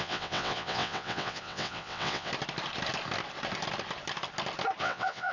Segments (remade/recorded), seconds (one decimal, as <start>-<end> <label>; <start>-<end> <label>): 0.0-2.3 remade; 2.3-4.8 recorded; 4.8-5.3 remade